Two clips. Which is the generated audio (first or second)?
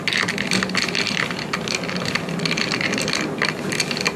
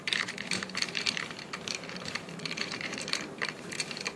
second